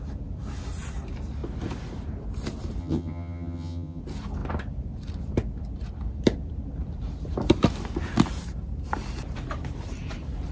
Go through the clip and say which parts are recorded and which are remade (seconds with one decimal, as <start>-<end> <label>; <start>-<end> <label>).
0.0-2.8 recorded; 2.8-4.0 remade; 4.0-10.5 recorded